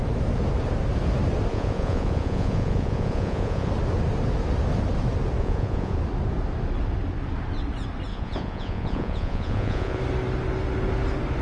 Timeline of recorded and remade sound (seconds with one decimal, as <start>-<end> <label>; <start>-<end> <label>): 0.0-1.5 recorded; 1.5-3.7 remade; 3.7-5.4 recorded; 5.4-6.0 remade; 6.0-8.1 recorded; 8.1-10.0 remade; 10.0-11.4 recorded